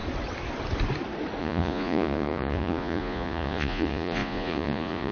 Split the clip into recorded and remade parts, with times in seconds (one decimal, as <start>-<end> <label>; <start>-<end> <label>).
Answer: 0.0-1.4 recorded; 1.4-5.1 remade